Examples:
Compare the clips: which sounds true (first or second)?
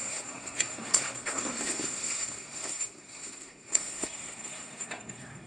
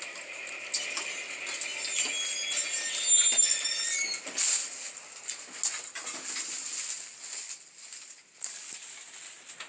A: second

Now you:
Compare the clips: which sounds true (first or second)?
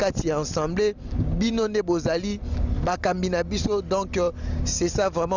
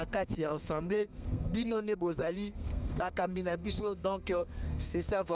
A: first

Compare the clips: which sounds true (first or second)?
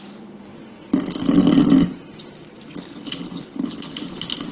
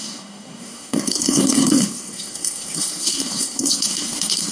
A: first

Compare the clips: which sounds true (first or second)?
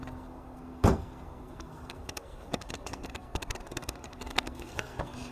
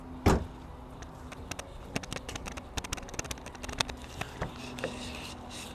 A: second